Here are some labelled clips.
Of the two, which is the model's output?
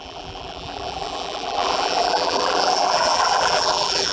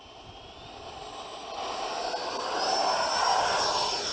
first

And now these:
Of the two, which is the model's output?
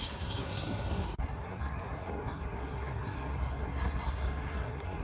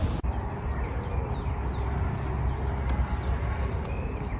first